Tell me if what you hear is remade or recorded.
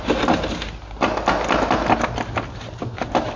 recorded